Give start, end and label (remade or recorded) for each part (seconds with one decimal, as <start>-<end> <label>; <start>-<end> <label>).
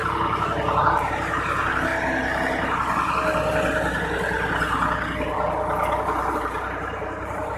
0.0-1.1 recorded; 1.1-1.9 remade; 1.9-6.3 recorded; 6.3-7.6 remade